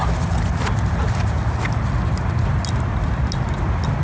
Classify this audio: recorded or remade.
recorded